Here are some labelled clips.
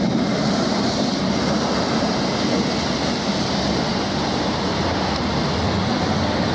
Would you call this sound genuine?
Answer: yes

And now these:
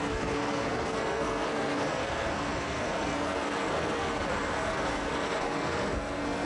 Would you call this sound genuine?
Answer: no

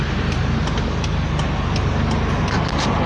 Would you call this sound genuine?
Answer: yes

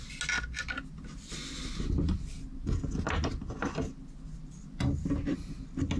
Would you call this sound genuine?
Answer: yes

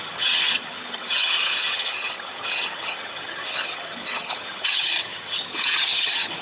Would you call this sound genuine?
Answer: no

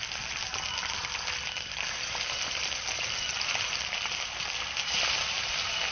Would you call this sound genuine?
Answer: no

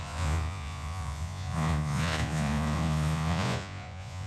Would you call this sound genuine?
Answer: no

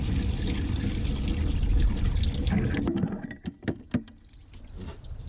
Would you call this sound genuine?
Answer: yes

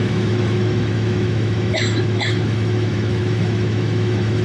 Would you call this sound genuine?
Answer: no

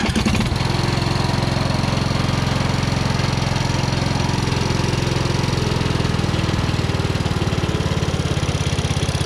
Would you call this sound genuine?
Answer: yes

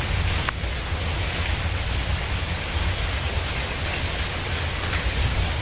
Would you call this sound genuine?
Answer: yes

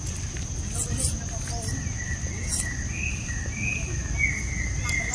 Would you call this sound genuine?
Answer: yes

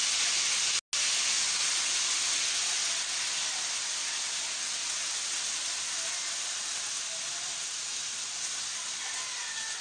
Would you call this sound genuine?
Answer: yes